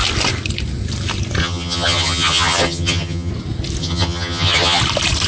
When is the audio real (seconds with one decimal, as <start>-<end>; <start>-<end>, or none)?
0.0-1.4; 3.3-3.8; 4.8-5.3